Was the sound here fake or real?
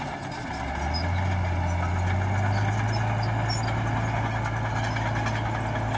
real